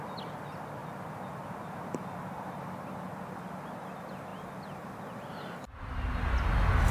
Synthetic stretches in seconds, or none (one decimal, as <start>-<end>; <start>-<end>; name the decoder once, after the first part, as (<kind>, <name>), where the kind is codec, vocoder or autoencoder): 0.8-2.9 (vocoder, BigVGAN v2)